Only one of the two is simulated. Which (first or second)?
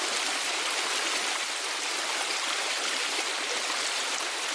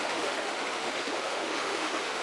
second